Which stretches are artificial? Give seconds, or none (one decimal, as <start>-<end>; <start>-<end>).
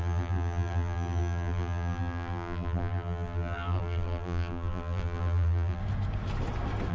0.0-5.8